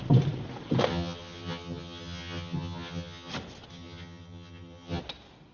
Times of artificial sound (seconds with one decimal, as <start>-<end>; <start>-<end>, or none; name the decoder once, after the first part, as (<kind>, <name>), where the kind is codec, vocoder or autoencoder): 0.9-3.3 (vocoder, HiFi-GAN); 3.7-5.0